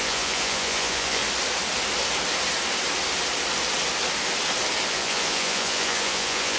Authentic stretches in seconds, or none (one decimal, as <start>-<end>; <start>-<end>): 1.2-4.9